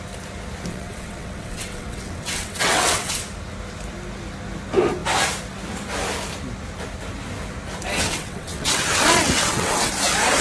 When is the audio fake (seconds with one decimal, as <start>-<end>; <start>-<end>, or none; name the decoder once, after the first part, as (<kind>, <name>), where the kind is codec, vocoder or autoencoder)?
0.7-3.2 (vocoder, WaveNeXt); 7.9-9.9